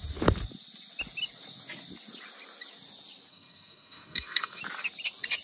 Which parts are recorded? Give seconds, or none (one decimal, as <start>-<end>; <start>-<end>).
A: 0.0-3.3; 4.6-5.4